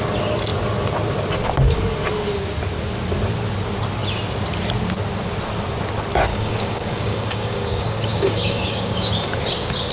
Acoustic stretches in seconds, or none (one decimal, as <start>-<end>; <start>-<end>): 0.0-6.3; 9.1-9.9